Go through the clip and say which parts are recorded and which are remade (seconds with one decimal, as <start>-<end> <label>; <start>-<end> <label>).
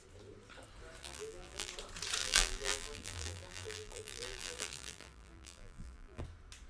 0.0-1.0 recorded; 1.0-1.7 remade; 1.7-2.2 recorded; 2.2-6.2 remade; 6.2-6.7 recorded